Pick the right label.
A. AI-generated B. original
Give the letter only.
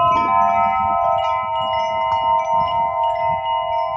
B